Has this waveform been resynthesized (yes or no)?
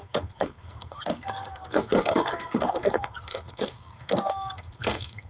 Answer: yes